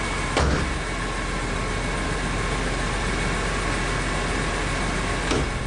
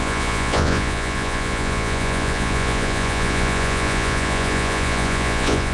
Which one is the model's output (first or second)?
second